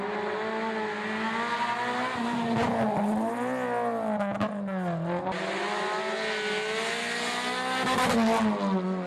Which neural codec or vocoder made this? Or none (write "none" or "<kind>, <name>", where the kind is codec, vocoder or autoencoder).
none